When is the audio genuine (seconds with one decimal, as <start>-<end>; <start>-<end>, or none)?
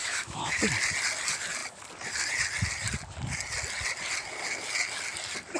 0.6-5.6